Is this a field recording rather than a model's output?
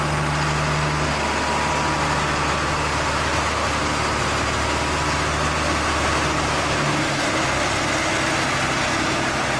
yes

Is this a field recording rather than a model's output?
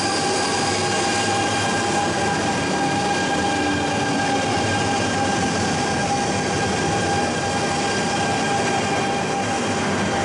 yes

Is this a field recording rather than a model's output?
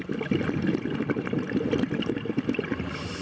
yes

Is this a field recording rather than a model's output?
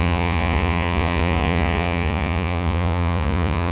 no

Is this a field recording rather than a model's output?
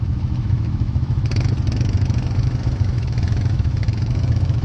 no